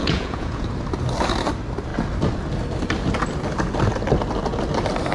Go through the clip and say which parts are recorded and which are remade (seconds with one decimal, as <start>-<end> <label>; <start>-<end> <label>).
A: 0.0-0.7 remade; 0.7-5.1 recorded